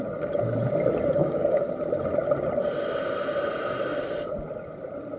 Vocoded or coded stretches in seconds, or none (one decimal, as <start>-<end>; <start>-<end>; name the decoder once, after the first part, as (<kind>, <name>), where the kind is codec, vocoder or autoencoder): 1.2-1.7 (codec, DAC)